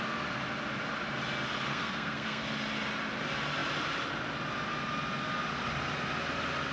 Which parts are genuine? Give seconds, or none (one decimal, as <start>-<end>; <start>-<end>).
0.0-1.7; 2.4-6.7